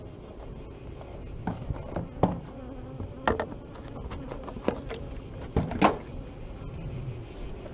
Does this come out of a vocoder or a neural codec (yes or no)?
no